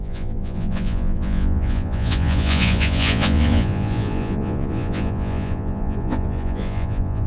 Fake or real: fake